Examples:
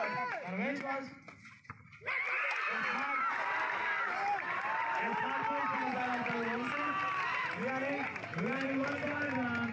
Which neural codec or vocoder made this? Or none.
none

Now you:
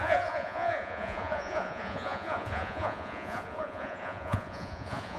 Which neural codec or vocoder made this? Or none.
vocoder, Vocos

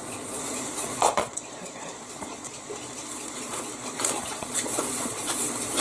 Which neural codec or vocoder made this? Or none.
vocoder, Vocos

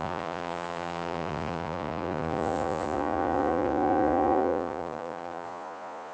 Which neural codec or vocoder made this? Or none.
vocoder, Vocos